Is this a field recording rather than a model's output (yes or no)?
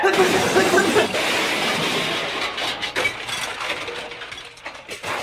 yes